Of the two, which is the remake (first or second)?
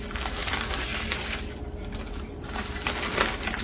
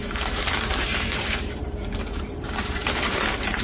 second